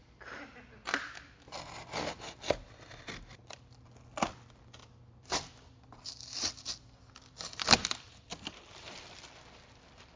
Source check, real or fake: fake